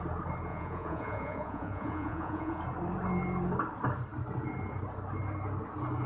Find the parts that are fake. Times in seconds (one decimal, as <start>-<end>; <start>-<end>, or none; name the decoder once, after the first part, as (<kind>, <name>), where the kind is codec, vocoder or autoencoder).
0.5-2.6 (vocoder, Vocos)

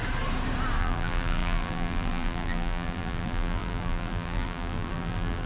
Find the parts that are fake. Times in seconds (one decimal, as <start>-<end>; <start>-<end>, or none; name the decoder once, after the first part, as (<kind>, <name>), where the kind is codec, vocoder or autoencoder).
0.8-5.5 (vocoder, BigVGAN v2)

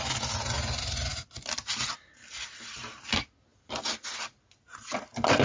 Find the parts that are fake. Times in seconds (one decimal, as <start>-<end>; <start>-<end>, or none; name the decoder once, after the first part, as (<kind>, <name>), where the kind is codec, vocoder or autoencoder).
none

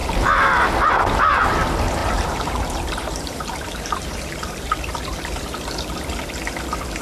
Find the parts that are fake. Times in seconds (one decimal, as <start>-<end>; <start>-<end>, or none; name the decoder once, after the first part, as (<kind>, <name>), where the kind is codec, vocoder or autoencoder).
2.0-5.4 (vocoder, BigVGAN v2)

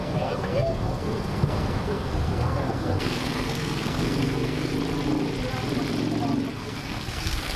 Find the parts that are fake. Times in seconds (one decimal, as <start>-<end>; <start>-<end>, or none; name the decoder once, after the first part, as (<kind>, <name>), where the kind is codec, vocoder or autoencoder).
0.0-4.7 (codec, SNAC); 6.5-7.6

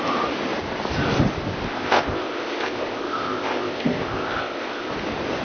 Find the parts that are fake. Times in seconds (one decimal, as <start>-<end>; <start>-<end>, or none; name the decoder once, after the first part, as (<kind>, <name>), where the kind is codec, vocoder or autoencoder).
1.7-4.9 (codec, ZipCodec)

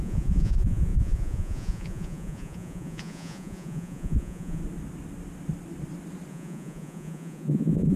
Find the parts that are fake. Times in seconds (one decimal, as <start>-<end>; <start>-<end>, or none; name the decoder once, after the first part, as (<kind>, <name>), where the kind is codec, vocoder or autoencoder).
0.0-4.6 (vocoder, Vocos); 6.3-8.0

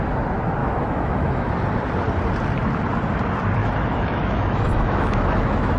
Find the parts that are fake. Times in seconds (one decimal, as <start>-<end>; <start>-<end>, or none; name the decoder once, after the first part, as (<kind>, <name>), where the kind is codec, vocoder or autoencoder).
0.6-1.5 (autoencoder, DAC-VAE); 3.6-5.8